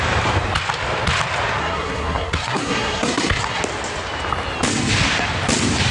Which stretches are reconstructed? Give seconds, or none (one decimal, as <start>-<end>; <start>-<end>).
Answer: 1.6-3.6